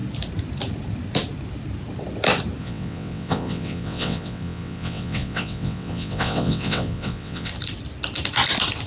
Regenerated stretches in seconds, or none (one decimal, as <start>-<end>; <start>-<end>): 2.6-7.5